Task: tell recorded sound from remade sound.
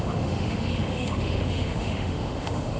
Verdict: remade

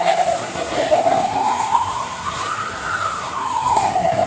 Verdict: remade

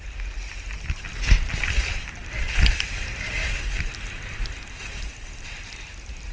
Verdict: recorded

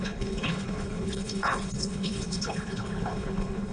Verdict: remade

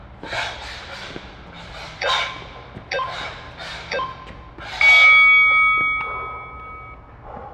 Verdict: recorded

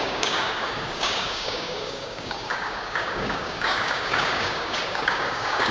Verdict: remade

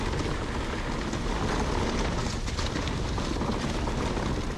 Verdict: recorded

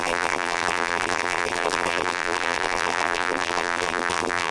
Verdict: remade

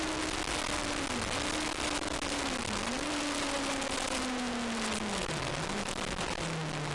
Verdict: recorded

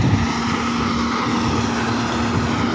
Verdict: recorded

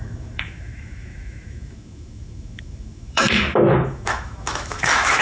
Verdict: remade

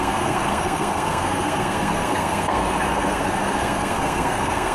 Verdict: remade